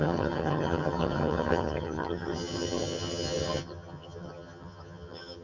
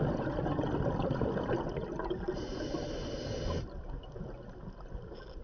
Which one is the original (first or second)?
second